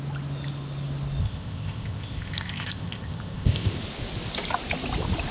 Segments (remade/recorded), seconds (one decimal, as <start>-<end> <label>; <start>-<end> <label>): 0.0-1.2 recorded; 1.2-3.8 remade; 3.8-5.3 recorded